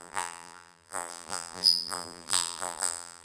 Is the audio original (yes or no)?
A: no